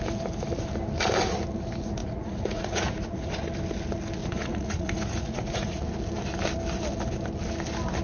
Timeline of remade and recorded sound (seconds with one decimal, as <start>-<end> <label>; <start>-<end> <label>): 0.0-2.0 recorded; 2.0-3.3 remade; 3.3-4.2 recorded; 4.2-5.8 remade; 5.8-8.0 recorded